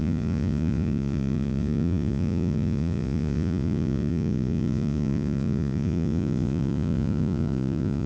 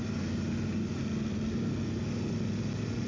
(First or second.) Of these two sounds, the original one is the second